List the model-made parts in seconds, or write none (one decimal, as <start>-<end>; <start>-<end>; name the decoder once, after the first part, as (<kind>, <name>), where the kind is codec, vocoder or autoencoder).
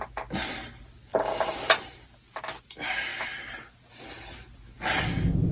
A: none